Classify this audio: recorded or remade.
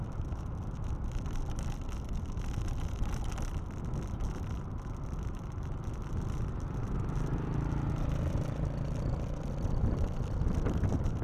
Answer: remade